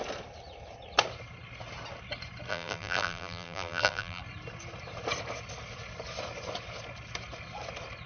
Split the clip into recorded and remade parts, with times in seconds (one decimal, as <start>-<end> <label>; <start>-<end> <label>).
0.0-2.5 recorded; 2.5-4.2 remade; 4.2-8.1 recorded